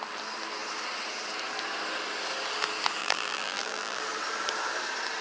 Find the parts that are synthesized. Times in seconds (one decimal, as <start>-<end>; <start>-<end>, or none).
3.0-4.0